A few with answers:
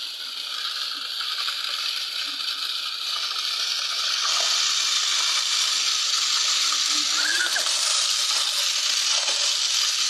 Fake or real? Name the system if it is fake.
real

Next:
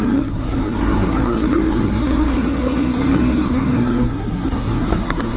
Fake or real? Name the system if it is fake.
fake, codec, SNAC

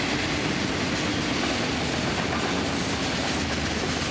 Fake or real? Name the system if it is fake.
real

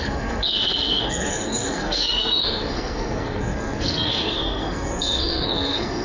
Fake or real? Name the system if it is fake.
fake, codec, SNAC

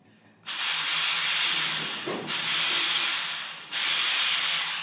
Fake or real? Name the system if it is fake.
real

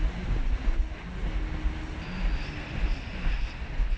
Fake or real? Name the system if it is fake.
real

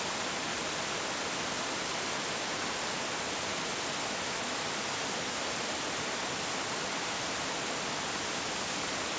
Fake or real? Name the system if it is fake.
real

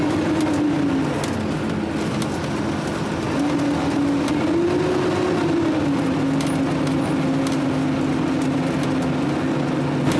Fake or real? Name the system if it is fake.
real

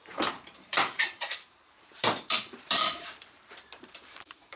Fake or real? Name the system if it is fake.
fake, vocoder, BigVGAN v2